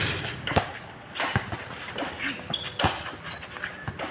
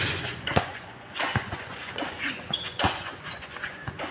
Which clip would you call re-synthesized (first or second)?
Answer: second